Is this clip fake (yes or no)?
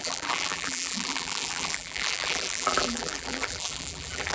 yes